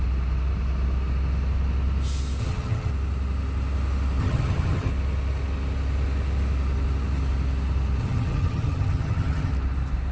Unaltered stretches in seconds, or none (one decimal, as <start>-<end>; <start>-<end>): 0.0-2.4; 2.9-4.2; 4.9-8.0; 9.5-10.1